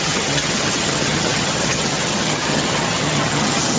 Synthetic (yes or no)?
yes